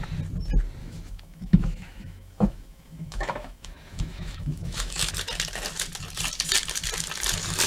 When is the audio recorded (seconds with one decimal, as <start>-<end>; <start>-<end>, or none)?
0.0-0.8; 5.1-7.7